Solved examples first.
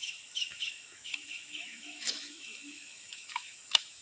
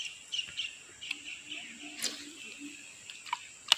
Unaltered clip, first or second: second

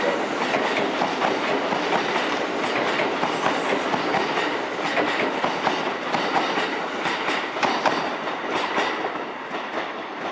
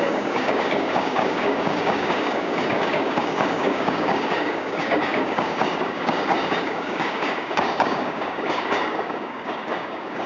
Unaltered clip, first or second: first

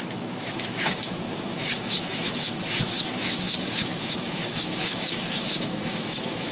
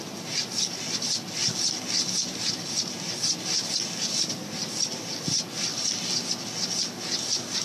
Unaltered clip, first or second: second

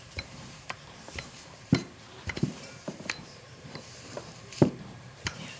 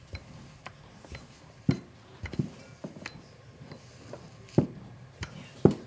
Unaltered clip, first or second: second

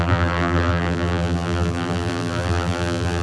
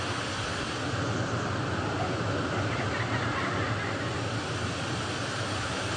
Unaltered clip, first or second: second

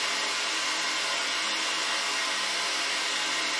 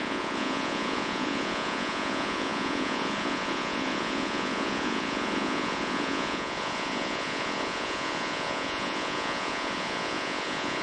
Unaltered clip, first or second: first